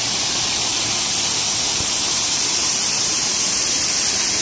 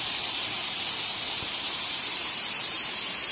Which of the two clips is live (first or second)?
first